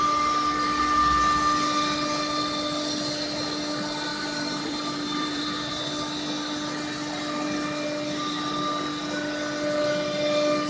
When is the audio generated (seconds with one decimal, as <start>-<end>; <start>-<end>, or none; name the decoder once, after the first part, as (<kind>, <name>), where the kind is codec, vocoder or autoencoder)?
4.1-5.8 (vocoder, BigVGAN v2)